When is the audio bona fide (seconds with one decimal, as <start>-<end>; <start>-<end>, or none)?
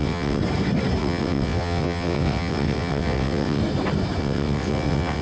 0.4-1.0; 3.6-4.2